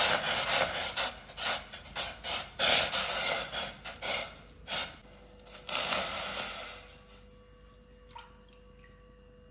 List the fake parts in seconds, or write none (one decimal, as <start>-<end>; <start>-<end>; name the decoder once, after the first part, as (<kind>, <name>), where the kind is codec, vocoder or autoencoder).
none